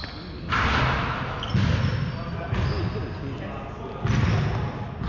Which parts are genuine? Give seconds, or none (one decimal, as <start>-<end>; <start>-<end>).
0.0-5.1